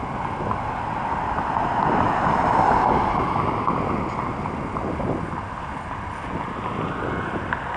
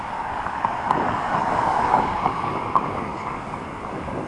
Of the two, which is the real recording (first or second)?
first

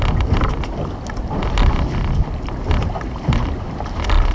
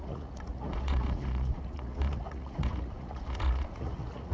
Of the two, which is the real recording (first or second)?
first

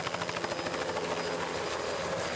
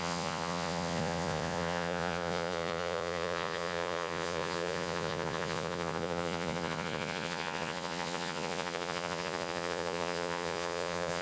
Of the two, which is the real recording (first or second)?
first